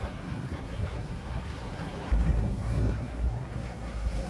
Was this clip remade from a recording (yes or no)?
yes